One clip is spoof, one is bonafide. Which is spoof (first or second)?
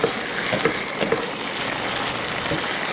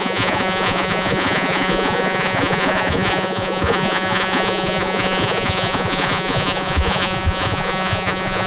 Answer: second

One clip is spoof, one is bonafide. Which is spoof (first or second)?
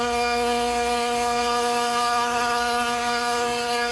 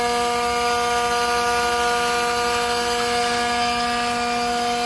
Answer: first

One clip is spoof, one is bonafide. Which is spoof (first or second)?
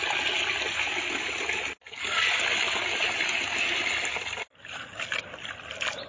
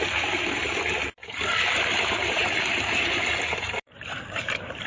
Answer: second